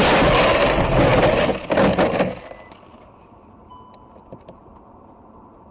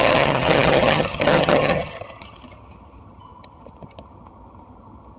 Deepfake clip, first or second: second